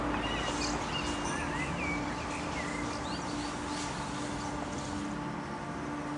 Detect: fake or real real